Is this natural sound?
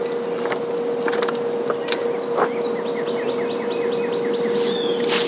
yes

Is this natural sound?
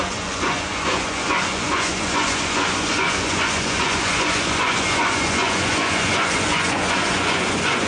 no